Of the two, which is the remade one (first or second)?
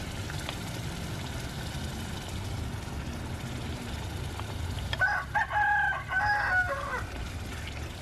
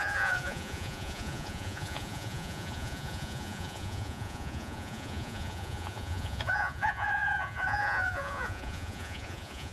second